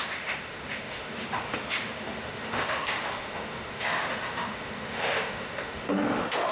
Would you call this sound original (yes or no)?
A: no